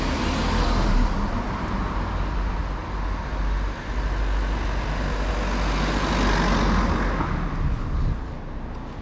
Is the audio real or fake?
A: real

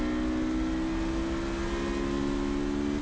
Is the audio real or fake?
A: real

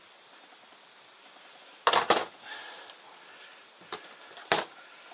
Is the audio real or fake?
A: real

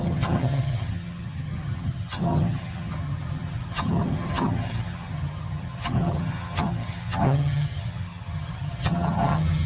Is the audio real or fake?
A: fake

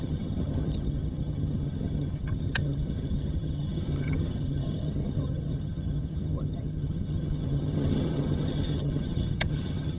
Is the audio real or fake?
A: fake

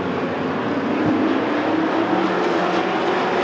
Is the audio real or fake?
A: real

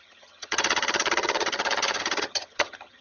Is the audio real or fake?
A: fake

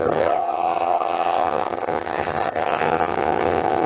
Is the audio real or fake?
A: fake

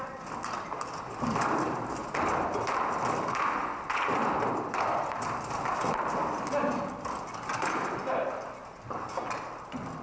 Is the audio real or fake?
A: real